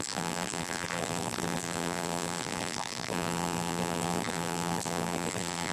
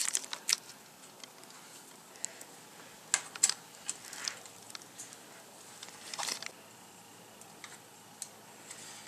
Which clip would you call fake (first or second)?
first